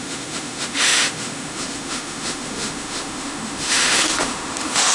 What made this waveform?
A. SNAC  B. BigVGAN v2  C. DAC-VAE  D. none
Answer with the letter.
C